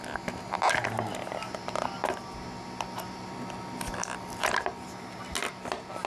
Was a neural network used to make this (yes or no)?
no